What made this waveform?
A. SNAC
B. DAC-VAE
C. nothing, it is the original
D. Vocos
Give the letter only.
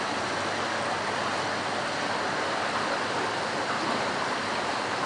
C